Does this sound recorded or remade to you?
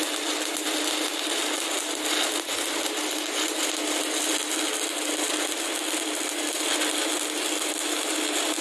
recorded